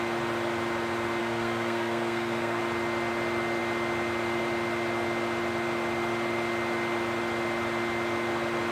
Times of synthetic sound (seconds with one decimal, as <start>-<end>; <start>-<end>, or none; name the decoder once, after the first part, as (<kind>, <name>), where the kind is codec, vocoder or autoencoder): 1.2-2.6 (codec, SNAC)